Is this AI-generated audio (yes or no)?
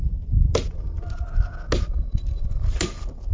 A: no